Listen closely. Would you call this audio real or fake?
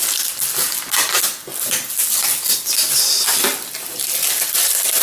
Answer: real